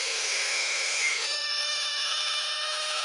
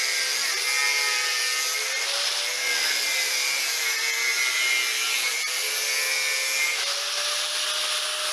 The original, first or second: second